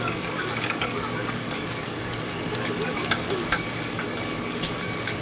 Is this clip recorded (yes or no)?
no